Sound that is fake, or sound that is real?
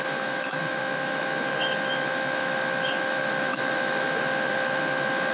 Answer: fake